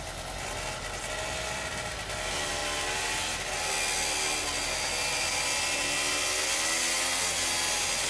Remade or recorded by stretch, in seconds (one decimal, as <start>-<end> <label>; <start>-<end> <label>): 0.0-8.1 recorded